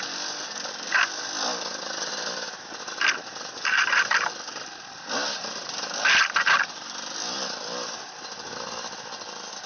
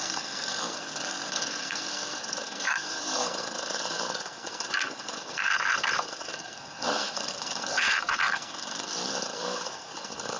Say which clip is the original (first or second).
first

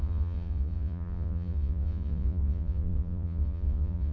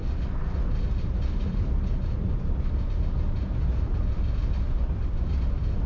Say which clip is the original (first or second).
second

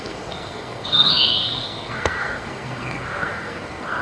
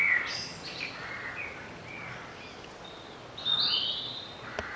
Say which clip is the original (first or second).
second